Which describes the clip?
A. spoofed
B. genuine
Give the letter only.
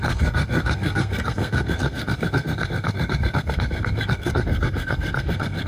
A